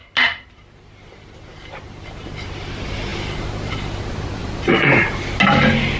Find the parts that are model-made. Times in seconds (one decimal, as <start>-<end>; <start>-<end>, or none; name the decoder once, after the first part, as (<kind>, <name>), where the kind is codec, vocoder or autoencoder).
none